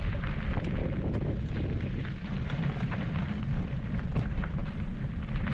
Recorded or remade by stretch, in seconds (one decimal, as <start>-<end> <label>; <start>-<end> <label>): 0.0-0.8 remade; 0.8-2.3 recorded; 2.3-5.5 remade